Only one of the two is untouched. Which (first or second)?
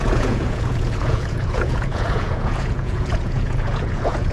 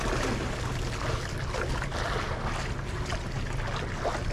second